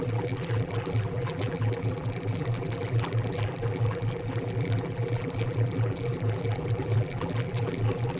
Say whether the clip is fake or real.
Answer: fake